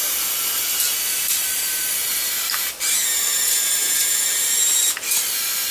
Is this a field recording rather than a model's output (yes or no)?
no